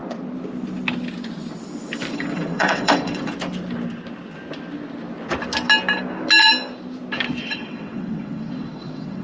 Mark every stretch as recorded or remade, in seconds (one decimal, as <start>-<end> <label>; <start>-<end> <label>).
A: 0.0-2.1 recorded; 2.1-3.3 remade; 3.3-7.4 recorded; 7.4-9.2 remade